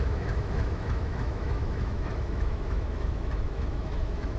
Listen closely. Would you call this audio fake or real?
fake